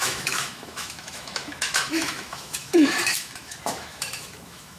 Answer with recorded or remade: remade